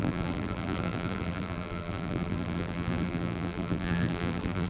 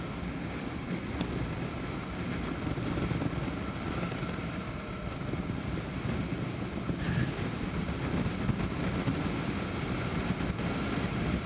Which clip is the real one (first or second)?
second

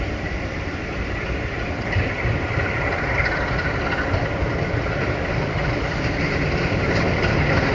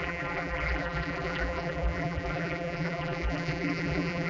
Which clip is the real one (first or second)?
first